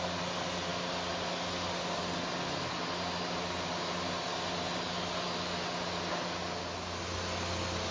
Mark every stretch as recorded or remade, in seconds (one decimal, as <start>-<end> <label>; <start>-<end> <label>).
0.0-7.9 recorded